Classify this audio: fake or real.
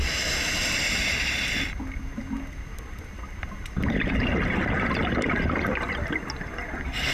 real